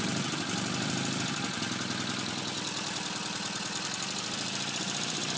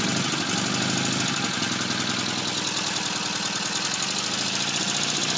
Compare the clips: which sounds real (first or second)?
second